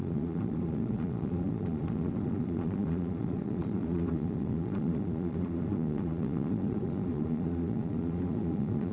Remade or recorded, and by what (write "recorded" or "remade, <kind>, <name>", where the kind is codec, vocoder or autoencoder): remade, vocoder, Vocos